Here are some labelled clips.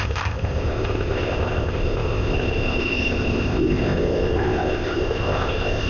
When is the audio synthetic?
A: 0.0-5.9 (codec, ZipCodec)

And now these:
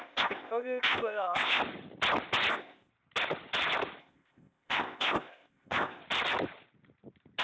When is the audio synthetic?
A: 0.0-1.6 (codec, ZipCodec); 2.5-2.9; 4.0-6.0

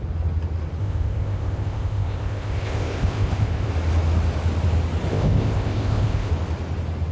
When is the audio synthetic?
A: 0.8-3.7 (codec, ZipCodec); 5.1-6.3